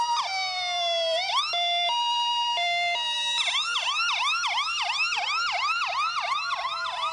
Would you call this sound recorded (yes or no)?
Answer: yes